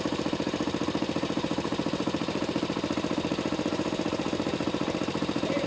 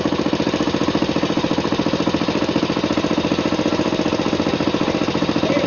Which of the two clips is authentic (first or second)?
second